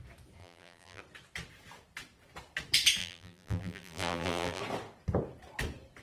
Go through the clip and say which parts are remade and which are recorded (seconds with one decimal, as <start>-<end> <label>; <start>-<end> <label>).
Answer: 0.0-0.4 recorded; 0.4-1.0 remade; 1.0-3.0 recorded; 3.0-4.6 remade; 4.6-6.0 recorded